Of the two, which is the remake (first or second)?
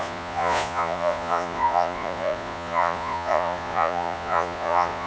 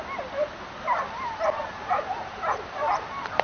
first